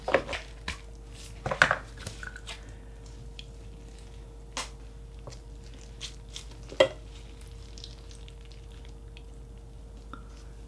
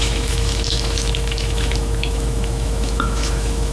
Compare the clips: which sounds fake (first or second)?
second